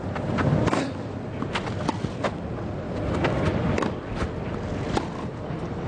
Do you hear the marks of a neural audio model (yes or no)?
no